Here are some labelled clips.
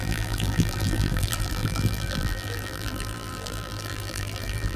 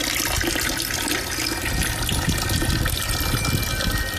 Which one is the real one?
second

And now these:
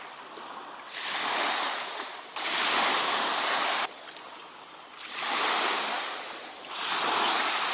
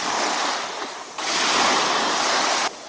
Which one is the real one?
second